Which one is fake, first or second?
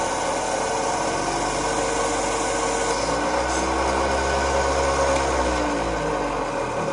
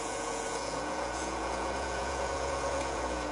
second